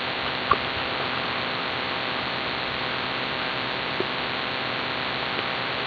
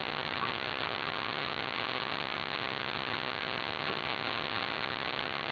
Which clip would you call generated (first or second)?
second